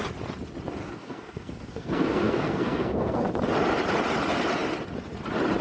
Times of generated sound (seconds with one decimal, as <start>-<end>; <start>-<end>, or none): 0.8-3.3